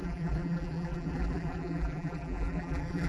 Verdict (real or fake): fake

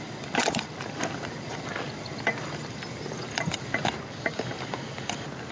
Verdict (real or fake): fake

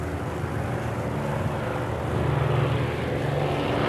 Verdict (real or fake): real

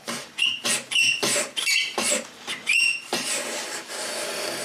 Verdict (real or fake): fake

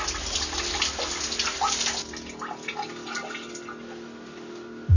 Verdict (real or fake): real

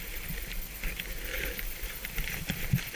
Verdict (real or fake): real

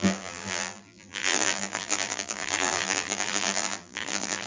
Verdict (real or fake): fake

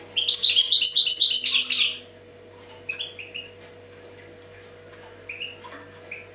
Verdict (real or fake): real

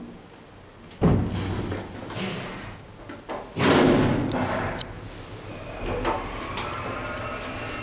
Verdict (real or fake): real